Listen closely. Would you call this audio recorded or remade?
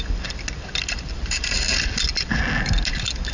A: recorded